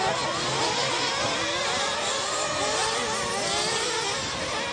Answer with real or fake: real